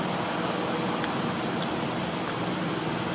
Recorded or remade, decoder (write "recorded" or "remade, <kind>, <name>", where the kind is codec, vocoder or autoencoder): recorded